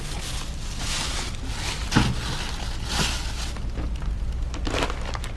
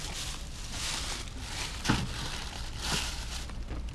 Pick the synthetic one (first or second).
second